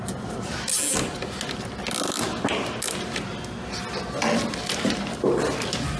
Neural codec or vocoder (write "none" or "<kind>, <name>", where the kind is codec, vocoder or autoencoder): none